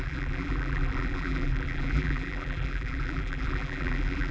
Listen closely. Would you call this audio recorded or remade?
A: remade